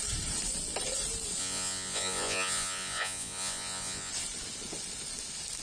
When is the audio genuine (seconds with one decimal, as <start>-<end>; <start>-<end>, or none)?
0.0-1.4; 4.1-5.6